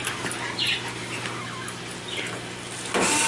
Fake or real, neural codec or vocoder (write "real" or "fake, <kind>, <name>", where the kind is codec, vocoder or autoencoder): real